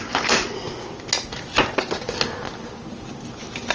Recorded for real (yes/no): yes